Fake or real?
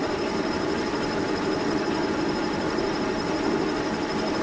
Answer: fake